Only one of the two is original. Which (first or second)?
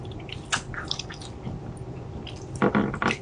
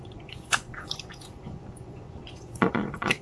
first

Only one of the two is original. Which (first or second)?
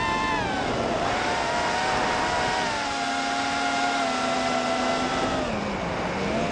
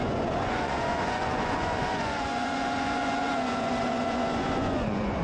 first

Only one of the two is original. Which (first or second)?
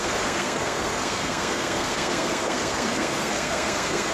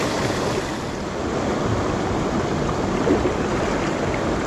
second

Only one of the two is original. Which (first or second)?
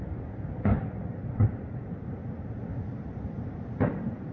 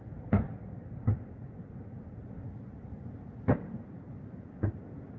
second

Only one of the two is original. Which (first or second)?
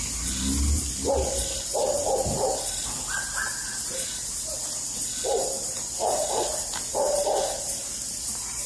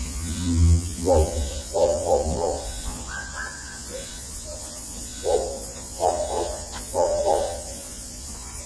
first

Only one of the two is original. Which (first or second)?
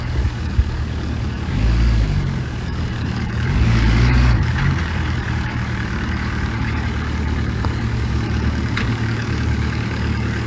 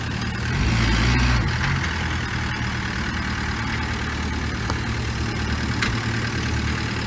second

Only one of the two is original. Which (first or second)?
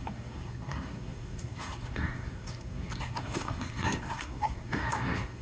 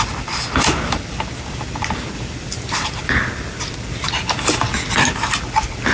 second